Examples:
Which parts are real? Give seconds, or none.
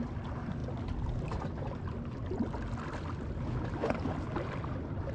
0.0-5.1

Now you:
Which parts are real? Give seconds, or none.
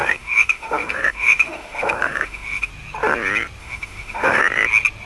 2.7-3.6; 4.4-5.1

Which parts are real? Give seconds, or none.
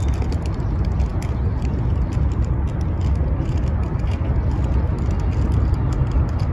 0.0-6.5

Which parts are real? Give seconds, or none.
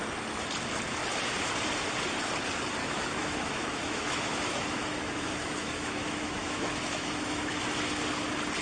0.0-2.8; 7.6-8.6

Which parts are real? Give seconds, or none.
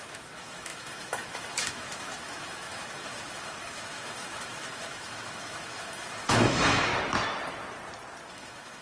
6.9-8.3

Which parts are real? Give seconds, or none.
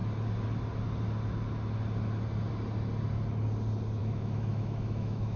0.0-4.0